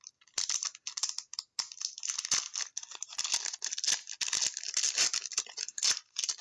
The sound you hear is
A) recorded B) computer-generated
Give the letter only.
A